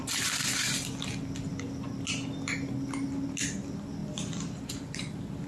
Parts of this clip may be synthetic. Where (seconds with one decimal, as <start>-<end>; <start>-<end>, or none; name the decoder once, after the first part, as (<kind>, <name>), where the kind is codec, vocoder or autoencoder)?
none